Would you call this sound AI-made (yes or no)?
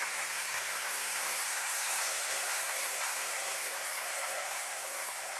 yes